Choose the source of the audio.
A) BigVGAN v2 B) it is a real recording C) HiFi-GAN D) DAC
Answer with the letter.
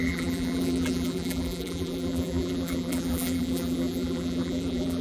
A